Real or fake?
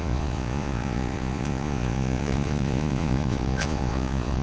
fake